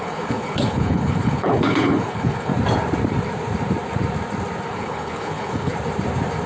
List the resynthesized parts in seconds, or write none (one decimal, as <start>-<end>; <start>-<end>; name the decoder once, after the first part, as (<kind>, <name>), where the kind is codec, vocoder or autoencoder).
0.0-2.5 (codec, HILCodec); 4.7-5.7

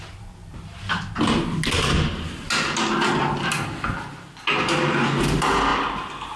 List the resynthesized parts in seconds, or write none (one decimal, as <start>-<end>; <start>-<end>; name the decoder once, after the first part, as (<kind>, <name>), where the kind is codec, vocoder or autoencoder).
none

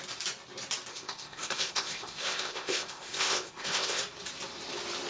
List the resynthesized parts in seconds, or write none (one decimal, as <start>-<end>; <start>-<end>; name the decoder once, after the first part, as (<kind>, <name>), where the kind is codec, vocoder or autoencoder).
0.9-4.0 (codec, ZipCodec)

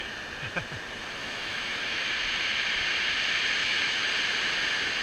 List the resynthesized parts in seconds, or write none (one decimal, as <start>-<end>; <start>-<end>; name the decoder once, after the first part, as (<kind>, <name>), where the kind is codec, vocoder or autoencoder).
1.2-2.1 (autoencoder, DAC-VAE); 3.6-4.1

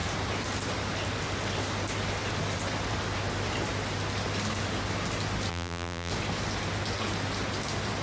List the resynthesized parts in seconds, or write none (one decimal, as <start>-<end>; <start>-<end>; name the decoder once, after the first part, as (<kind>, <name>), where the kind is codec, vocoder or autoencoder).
5.5-6.1 (vocoder, BigVGAN v2)

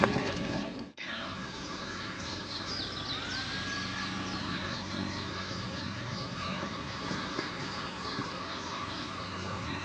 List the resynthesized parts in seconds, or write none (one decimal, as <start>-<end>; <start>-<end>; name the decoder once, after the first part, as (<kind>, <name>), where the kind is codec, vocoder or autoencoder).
0.0-2.7 (codec, SNAC); 4.4-9.8